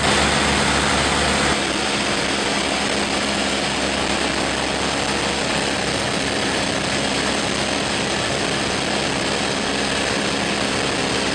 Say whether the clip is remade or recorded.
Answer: recorded